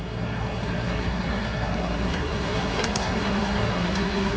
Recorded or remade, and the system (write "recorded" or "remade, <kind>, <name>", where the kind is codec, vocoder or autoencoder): remade, codec, SNAC